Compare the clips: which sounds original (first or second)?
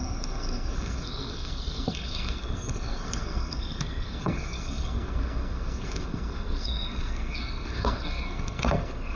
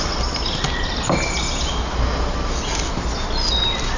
second